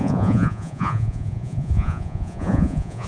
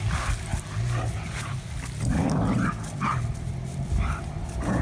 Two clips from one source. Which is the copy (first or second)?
first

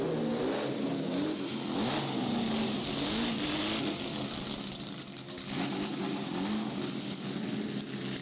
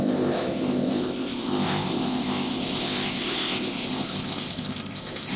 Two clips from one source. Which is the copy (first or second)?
second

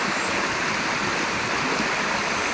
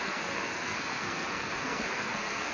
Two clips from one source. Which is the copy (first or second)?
second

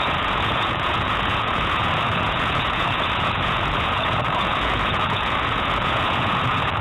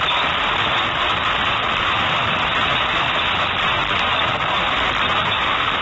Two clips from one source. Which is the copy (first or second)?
first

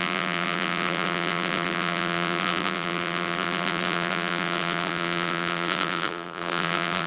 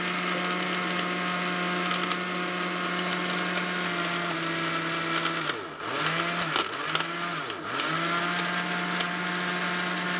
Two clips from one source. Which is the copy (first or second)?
first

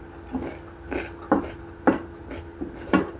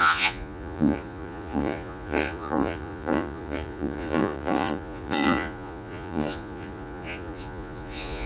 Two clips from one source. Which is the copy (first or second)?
second